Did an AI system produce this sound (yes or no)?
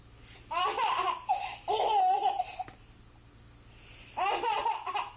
no